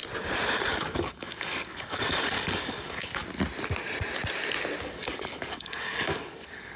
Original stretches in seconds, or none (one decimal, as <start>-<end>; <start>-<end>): 0.0-0.7; 3.2-4.8